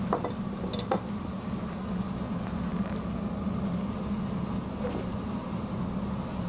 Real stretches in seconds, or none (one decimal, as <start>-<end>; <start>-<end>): 0.0-6.5